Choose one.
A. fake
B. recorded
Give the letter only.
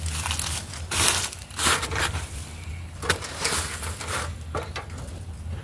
B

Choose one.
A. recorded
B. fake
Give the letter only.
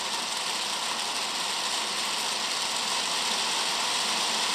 A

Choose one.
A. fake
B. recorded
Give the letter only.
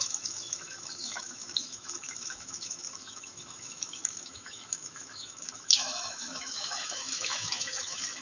A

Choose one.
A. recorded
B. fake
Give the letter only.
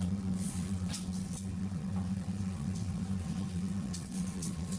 B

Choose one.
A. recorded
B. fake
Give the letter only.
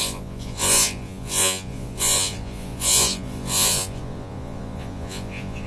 B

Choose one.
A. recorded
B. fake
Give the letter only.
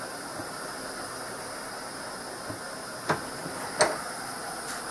A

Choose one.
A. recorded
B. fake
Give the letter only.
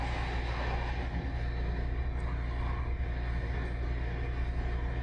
A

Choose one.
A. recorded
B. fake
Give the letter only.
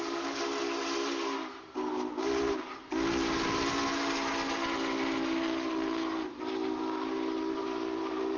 A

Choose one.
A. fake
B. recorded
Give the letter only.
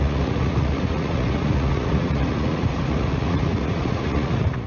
A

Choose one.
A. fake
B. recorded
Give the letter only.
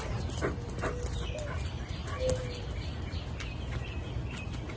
B